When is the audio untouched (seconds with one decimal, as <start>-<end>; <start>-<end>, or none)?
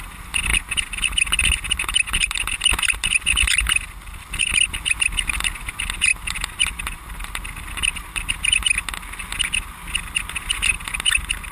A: 0.0-11.5